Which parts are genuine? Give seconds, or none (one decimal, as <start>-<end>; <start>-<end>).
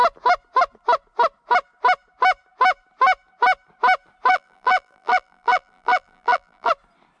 0.0-4.3; 6.7-7.2